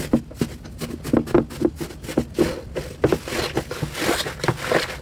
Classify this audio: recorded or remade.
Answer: recorded